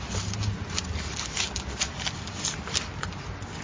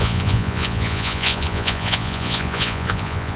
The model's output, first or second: second